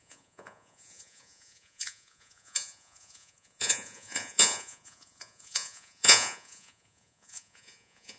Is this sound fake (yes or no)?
yes